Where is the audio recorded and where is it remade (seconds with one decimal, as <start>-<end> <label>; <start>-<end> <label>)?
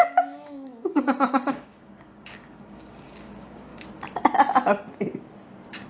0.0-3.7 remade; 3.7-5.9 recorded